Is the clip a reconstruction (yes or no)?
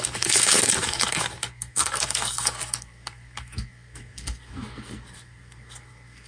yes